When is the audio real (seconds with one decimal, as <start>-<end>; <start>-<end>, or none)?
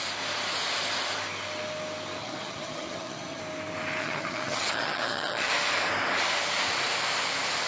0.0-2.2; 3.4-4.0; 5.5-7.7